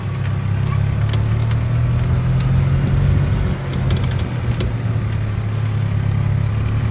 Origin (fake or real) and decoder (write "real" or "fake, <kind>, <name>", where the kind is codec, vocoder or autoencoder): real